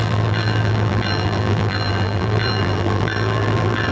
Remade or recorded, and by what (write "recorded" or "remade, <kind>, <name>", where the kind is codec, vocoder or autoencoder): remade, vocoder, BigVGAN v2